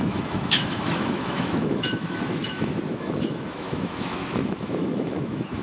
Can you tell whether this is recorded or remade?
remade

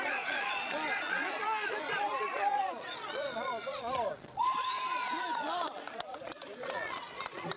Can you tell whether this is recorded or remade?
remade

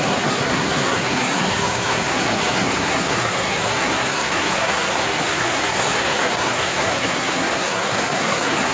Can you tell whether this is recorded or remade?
remade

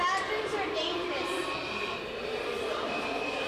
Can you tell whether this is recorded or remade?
recorded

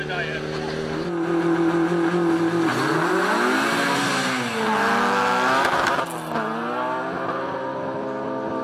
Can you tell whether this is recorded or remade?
recorded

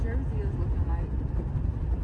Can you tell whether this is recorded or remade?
recorded